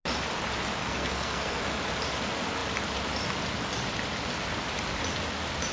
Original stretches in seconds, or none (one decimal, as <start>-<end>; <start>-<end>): 0.0-0.8; 1.6-5.7